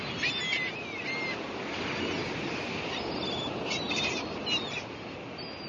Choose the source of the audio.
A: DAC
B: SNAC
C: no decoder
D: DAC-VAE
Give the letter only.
C